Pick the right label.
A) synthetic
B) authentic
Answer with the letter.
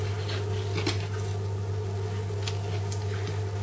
B